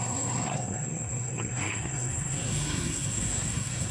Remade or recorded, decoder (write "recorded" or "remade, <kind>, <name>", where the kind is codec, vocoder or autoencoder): remade, codec, SNAC